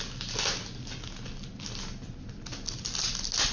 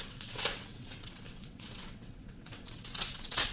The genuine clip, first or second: first